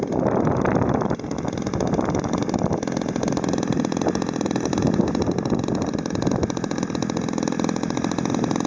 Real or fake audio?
real